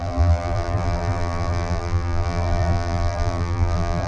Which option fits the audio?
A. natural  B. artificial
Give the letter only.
B